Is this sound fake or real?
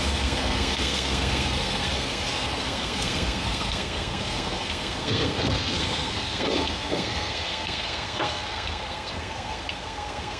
fake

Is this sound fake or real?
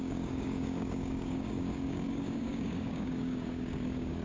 fake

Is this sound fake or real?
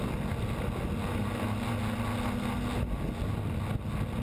real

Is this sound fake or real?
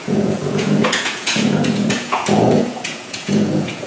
fake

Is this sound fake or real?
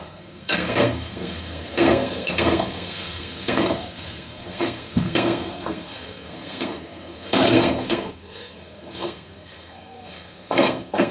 fake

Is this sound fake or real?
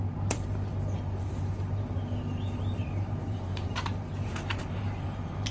fake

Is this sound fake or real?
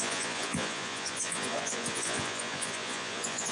fake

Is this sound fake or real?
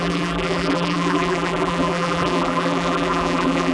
fake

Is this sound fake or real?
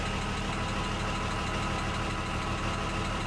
real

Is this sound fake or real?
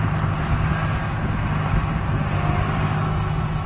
real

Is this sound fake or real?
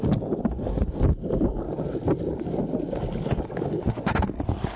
real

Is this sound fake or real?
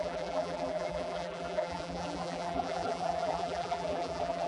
fake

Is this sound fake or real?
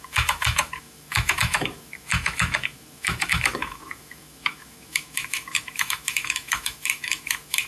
fake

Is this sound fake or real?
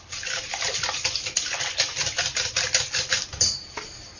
real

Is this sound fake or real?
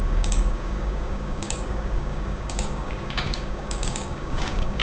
fake